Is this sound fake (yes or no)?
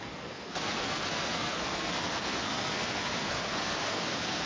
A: yes